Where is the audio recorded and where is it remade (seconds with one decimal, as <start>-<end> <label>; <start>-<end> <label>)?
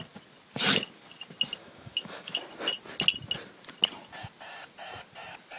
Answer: 0.0-1.6 recorded; 1.6-2.4 remade; 2.4-5.6 recorded